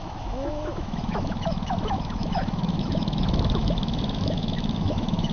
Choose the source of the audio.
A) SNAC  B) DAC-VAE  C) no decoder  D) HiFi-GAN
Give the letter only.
B